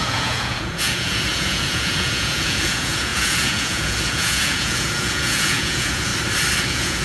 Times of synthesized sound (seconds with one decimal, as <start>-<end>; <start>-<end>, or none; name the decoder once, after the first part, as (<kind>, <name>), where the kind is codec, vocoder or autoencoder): 0.0-6.1 (vocoder, Vocos); 6.6-7.0